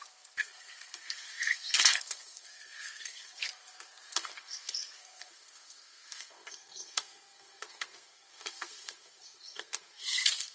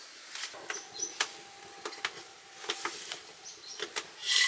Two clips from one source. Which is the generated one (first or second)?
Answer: first